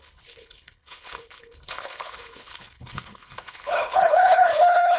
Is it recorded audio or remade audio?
remade